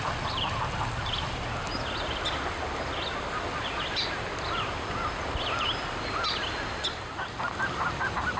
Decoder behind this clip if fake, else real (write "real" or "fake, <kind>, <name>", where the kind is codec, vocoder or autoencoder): real